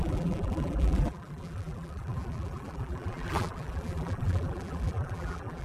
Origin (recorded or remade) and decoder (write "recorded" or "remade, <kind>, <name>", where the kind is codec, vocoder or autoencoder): remade, vocoder, BigVGAN v2